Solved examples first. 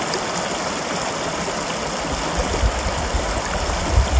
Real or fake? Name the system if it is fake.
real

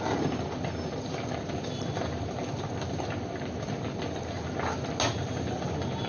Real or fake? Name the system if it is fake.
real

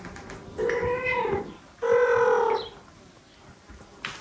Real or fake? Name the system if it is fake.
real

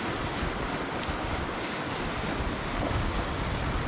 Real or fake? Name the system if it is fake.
real